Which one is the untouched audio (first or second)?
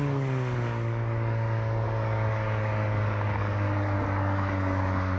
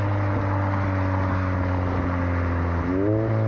second